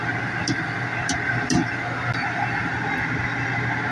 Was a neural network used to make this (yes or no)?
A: no